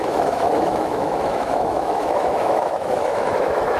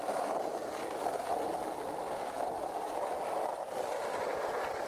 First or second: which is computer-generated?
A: first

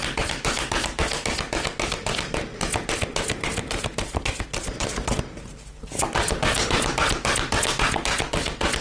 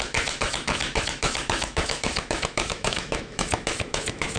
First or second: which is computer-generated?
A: second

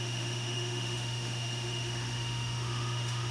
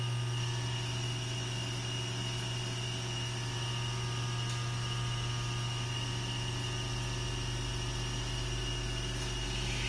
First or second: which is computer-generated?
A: first